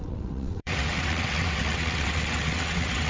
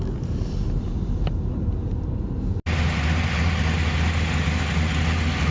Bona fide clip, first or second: second